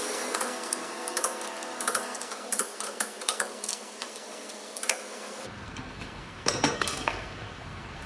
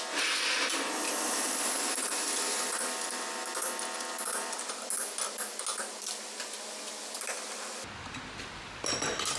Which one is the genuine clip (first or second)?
second